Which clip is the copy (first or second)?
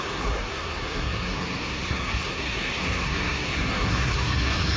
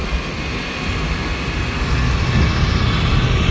first